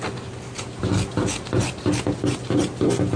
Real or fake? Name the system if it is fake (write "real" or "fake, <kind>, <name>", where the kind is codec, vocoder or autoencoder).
real